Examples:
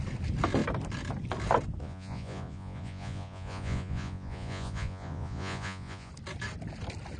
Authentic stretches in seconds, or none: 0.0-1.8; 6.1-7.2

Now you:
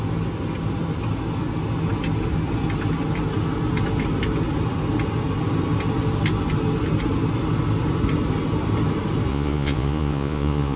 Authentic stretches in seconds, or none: 0.0-9.3

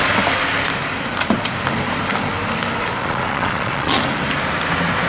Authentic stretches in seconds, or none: 0.0-3.0; 4.0-5.1

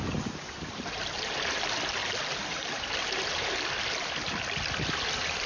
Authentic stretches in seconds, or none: 0.0-5.5

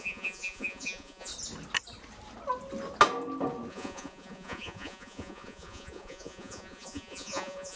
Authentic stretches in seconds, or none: 1.3-3.7

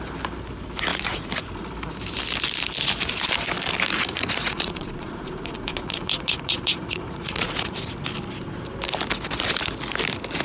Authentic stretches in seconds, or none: 0.0-0.9; 1.6-4.1; 7.9-10.4